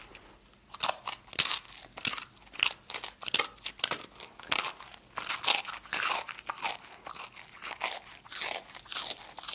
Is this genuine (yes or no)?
yes